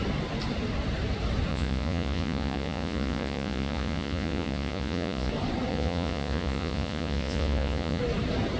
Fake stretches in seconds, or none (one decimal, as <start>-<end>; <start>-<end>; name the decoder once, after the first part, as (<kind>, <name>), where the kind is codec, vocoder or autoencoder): 1.5-5.3 (vocoder, Vocos); 5.7-8.0